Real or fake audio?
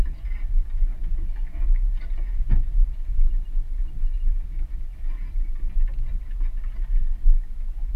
real